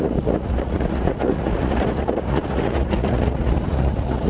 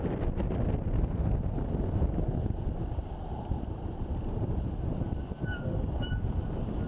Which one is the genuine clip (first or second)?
second